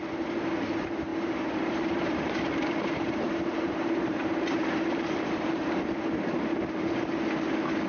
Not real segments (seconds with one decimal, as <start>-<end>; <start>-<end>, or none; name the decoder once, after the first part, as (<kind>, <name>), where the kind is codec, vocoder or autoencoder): 1.1-5.8 (vocoder, BigVGAN v2)